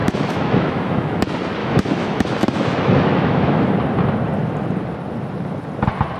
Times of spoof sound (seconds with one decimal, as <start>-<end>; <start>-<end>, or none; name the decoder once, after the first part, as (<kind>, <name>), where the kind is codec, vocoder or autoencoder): 0.0-1.2 (autoencoder, DAC-VAE); 1.6-3.7